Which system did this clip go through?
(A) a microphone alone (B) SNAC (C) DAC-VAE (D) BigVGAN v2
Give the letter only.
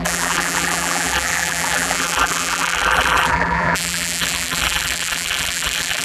D